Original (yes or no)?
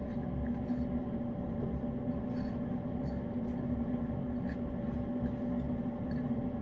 yes